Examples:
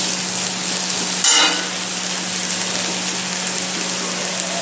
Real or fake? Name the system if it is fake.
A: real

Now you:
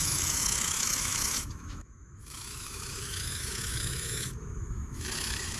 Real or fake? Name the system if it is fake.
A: fake, autoencoder, DAC-VAE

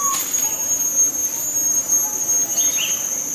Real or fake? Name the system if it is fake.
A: real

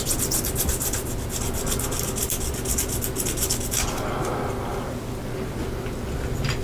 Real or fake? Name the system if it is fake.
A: real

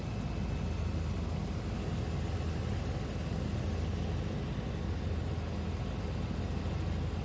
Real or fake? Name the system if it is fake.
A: real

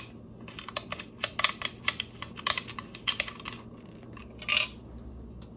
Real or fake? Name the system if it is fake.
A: real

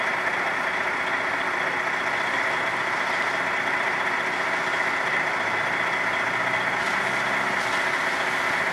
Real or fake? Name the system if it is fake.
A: real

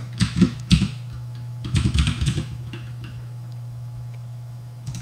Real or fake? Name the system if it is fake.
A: fake, autoencoder, DAC-VAE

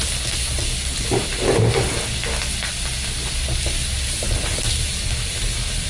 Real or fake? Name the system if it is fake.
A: real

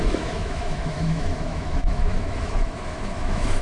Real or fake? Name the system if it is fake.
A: fake, autoencoder, DAC-VAE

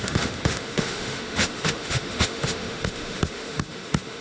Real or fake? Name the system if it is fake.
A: fake, autoencoder, DAC-VAE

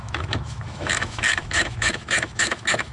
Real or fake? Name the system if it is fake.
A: fake, autoencoder, DAC-VAE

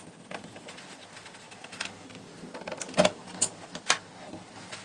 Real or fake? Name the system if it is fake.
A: real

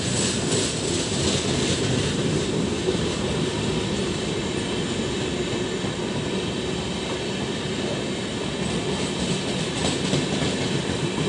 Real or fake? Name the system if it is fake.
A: real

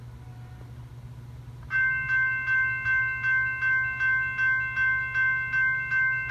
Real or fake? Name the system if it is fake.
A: real